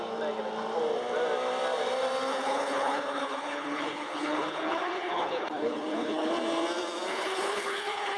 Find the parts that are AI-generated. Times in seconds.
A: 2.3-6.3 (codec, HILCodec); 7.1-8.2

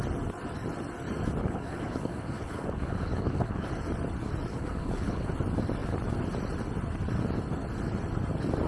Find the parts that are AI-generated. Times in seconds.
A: 1.4-3.7 (codec, HILCodec); 4.5-5.3